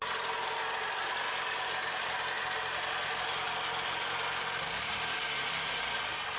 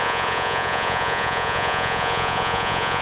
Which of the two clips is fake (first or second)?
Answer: second